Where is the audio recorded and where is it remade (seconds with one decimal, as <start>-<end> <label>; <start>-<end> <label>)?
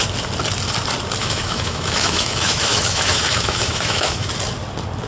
0.0-1.2 recorded; 1.2-4.3 remade; 4.3-5.1 recorded